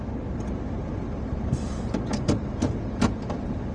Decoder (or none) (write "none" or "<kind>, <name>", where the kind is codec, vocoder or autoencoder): vocoder, BigVGAN v2